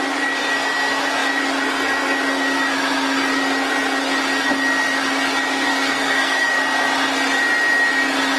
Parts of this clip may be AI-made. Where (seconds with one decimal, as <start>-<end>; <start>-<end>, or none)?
5.7-6.5